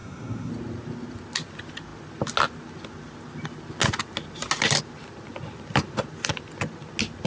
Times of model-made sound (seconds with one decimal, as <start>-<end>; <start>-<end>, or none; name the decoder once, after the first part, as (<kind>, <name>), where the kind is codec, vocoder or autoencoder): 0.0-0.5 (codec, SNAC)